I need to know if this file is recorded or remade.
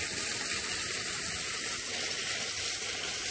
recorded